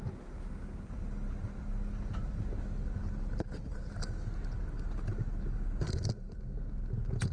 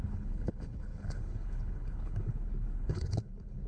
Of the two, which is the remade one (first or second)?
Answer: second